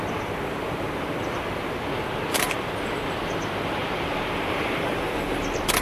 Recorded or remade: remade